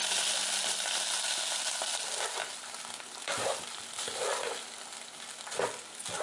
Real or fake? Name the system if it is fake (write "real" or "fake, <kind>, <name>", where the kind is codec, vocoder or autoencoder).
real